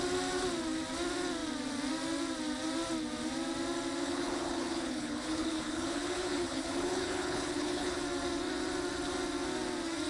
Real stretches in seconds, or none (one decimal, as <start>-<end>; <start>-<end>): 0.0-4.0; 8.0-10.1